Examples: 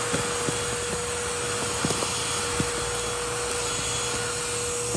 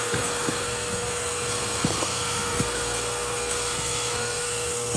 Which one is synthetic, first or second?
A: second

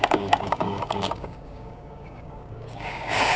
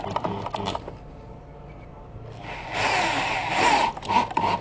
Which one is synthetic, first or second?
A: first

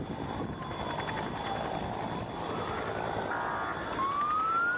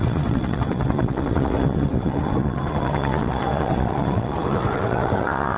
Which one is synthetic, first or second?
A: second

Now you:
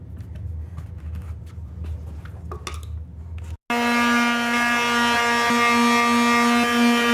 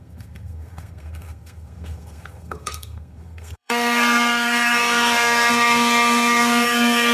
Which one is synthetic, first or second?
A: second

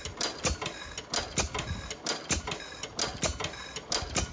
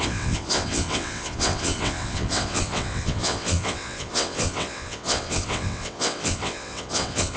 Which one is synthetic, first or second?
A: second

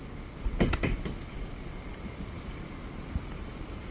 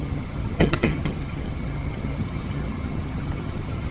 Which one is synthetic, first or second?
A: second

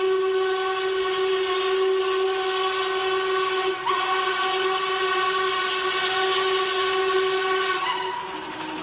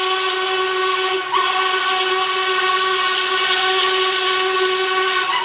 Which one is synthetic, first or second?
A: second